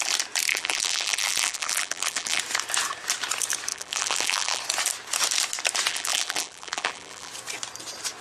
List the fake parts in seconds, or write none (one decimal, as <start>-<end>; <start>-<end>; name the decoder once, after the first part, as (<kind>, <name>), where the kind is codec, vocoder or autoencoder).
0.5-2.4 (vocoder, BigVGAN v2); 3.7-4.6; 5.9-7.3